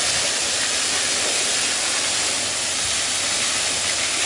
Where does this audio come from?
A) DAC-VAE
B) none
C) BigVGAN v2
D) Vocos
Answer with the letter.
B